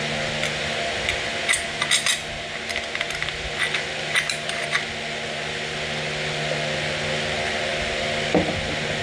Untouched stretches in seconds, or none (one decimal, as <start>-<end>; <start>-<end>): 0.0-9.0